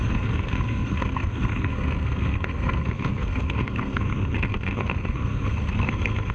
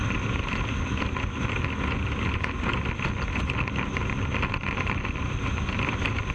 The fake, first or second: first